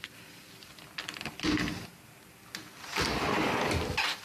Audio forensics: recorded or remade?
recorded